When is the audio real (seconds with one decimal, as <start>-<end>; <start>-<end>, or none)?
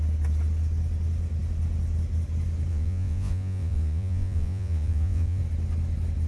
0.0-2.7; 5.4-6.3